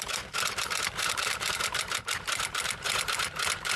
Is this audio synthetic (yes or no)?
yes